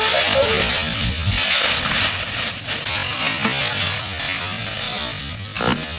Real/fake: real